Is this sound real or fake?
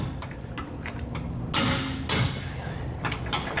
real